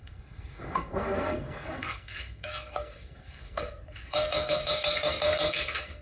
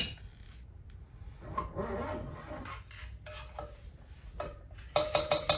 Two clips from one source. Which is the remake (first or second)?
first